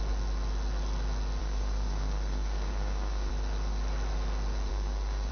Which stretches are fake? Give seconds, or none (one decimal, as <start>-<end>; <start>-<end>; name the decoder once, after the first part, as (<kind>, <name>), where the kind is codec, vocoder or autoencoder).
1.4-3.3 (codec, SNAC); 4.7-5.3